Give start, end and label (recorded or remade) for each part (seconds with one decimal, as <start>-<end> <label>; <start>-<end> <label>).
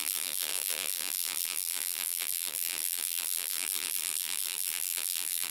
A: 0.0-5.5 remade